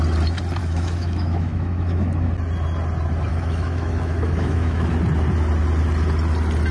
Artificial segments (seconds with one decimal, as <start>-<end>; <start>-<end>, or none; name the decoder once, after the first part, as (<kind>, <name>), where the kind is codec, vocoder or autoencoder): 0.6-2.3 (autoencoder, DAC-VAE); 3.3-4.9